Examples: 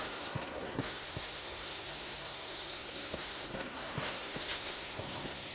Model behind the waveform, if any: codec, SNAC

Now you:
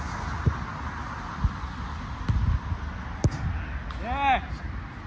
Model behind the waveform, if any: none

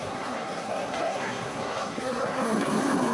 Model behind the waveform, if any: codec, SNAC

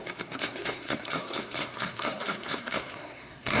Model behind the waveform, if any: codec, SNAC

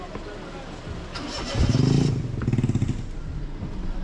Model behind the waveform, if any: none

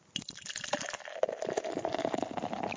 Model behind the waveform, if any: none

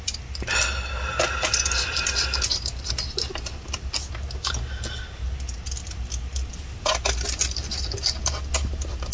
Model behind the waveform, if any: none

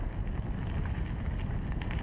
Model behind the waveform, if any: none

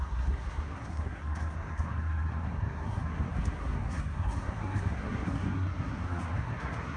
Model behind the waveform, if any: codec, SNAC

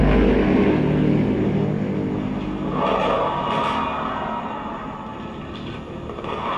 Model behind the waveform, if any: none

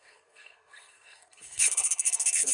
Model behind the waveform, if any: codec, SNAC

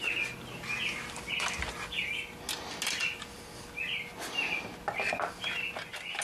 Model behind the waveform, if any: none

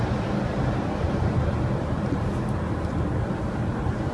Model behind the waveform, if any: none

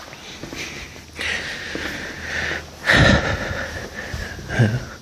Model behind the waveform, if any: none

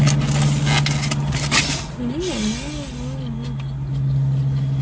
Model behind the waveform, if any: none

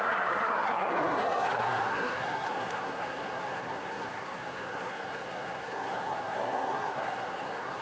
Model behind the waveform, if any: codec, SNAC